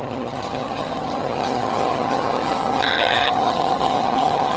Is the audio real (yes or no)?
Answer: no